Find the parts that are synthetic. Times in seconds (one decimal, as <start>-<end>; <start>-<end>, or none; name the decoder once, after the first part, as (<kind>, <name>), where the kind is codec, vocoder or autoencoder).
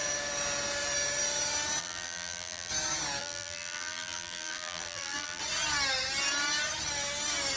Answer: 1.8-2.7 (vocoder, BigVGAN v2); 3.2-5.4